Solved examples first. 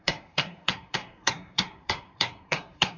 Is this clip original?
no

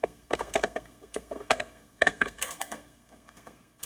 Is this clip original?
no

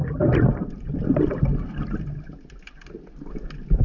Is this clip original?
yes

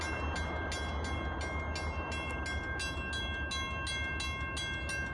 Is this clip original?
yes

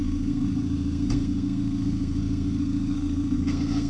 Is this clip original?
no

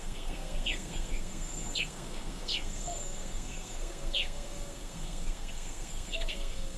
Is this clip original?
no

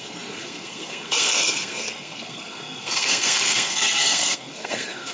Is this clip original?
no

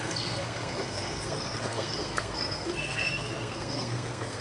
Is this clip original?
no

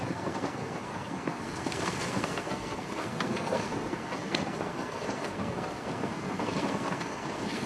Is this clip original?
no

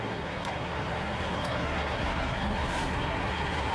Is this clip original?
no